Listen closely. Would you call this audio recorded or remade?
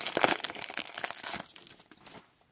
recorded